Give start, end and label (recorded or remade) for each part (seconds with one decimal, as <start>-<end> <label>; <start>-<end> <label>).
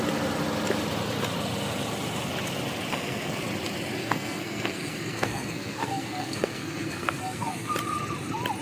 0.0-2.9 recorded; 2.9-3.4 remade; 3.4-4.0 recorded; 4.0-7.7 remade; 7.7-8.6 recorded